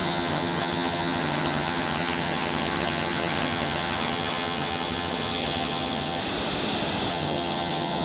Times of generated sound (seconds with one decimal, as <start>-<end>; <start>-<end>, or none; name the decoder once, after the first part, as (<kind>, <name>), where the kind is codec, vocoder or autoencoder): 0.0-6.2 (vocoder, HiFi-GAN); 7.1-8.0